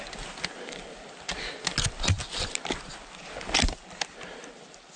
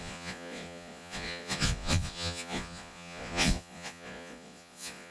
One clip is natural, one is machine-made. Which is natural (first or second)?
first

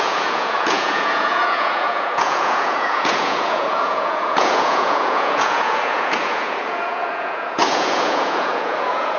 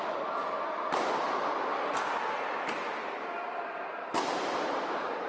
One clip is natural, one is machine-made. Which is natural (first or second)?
second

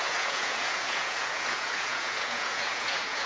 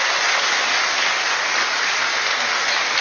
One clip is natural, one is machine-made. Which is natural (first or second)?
second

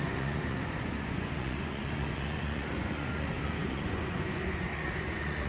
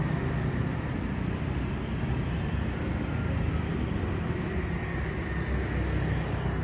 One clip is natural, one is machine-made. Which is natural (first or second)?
second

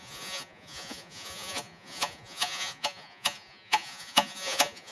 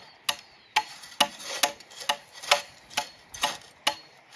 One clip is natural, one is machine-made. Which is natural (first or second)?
second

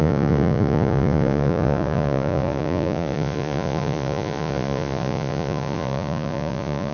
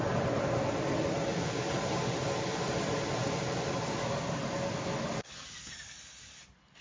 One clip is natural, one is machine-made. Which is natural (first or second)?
second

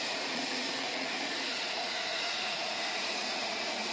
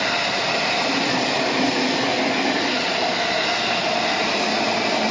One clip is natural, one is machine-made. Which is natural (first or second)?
second